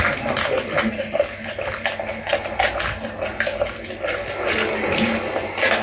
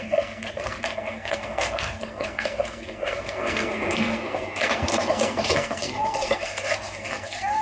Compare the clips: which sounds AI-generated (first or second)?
second